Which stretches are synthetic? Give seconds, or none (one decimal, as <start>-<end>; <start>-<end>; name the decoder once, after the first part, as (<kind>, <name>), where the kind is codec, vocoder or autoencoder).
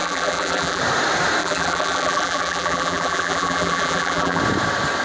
0.0-0.8 (vocoder, BigVGAN v2); 1.4-4.4